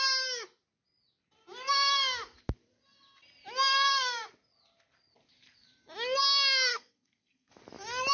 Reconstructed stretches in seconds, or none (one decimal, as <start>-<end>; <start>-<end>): 6.7-7.5